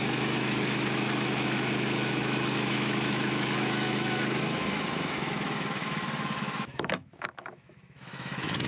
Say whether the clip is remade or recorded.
remade